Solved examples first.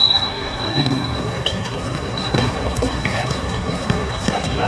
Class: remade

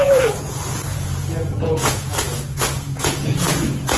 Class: remade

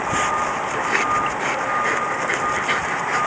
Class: recorded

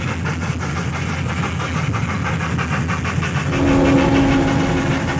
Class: recorded